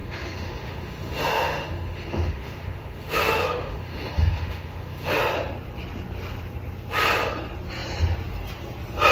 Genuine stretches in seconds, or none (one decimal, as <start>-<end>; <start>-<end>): 5.2-9.1